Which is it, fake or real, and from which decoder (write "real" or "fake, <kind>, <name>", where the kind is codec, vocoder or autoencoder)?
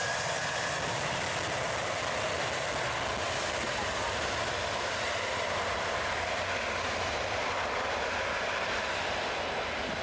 real